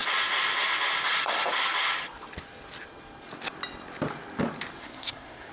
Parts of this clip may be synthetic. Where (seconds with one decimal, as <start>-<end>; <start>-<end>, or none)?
4.8-5.5